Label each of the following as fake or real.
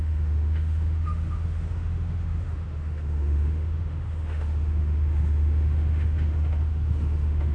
fake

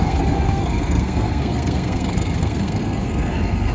fake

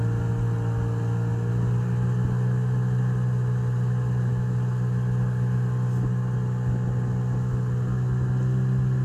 real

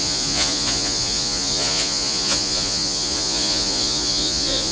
fake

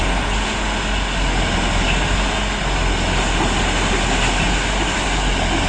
real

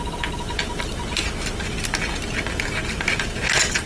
real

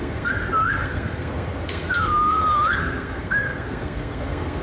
fake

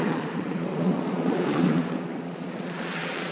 fake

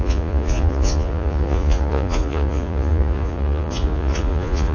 fake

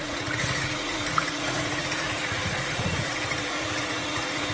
fake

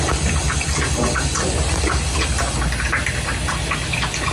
real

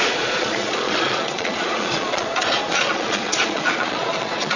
fake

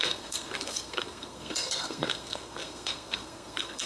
fake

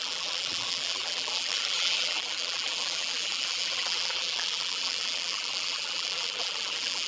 fake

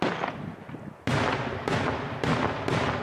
real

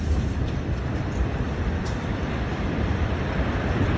fake